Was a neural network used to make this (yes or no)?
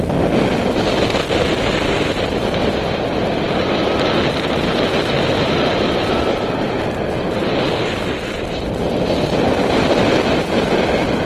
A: no